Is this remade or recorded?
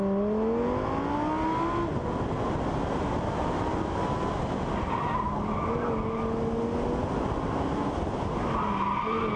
recorded